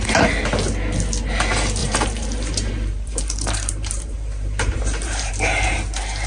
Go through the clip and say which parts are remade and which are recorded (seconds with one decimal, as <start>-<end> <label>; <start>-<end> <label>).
0.0-1.8 recorded; 1.8-5.3 remade; 5.3-6.3 recorded